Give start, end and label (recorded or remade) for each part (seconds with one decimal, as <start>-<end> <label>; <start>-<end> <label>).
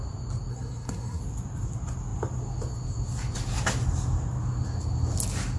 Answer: 0.0-0.5 recorded; 0.5-1.2 remade; 1.2-5.6 recorded